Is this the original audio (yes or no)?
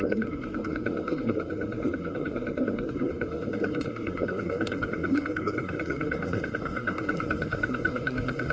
no